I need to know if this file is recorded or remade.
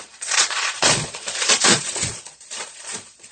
remade